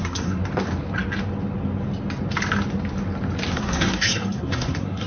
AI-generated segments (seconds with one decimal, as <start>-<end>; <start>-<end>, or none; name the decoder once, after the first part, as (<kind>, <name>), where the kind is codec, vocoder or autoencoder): 0.0-0.4 (codec, SNAC); 3.5-5.1